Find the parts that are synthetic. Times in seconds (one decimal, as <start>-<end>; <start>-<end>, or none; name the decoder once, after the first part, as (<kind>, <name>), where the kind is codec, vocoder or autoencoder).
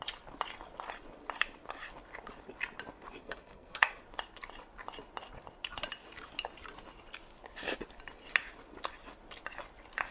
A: 3.2-4.0 (codec, SNAC)